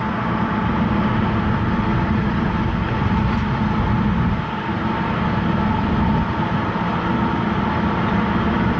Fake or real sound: real